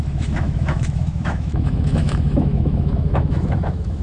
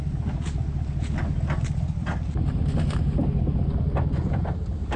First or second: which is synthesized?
first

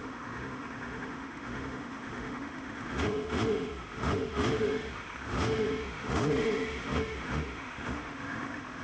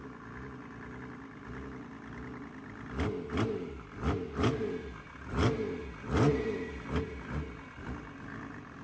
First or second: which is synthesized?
first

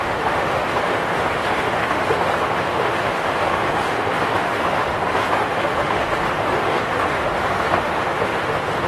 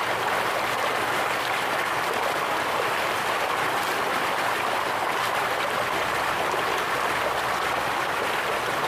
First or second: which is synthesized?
first